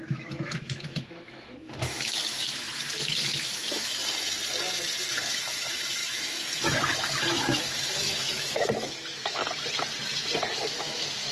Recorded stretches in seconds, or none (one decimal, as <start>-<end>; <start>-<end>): 4.0-5.1; 9.4-10.7